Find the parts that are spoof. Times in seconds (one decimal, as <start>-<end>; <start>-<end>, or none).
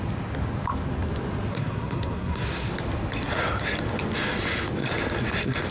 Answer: 1.5-2.7